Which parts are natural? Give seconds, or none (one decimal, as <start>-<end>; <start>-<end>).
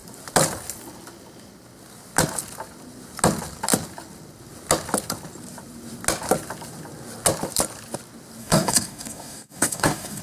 0.0-8.4